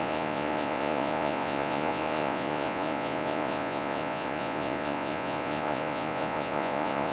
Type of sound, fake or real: fake